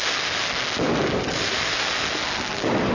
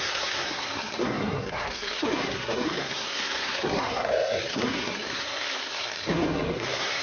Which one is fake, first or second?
second